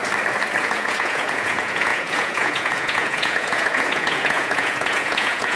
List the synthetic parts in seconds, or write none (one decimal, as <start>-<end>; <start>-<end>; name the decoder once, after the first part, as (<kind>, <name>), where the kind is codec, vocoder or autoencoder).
0.6-5.5 (vocoder, Vocos)